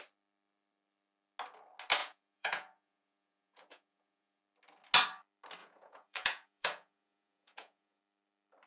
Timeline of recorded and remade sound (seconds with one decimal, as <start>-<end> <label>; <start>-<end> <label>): 0.0-2.0 recorded; 2.0-4.4 remade; 4.4-5.6 recorded; 5.6-8.0 remade; 8.0-8.7 recorded